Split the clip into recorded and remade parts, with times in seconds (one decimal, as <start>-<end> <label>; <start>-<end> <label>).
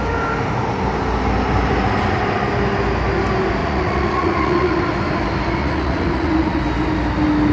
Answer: 0.0-3.6 recorded; 3.6-4.8 remade; 4.8-5.6 recorded; 5.6-6.6 remade; 6.6-7.5 recorded